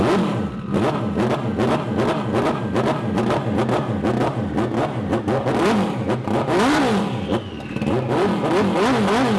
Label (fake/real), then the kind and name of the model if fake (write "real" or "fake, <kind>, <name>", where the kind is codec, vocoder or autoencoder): real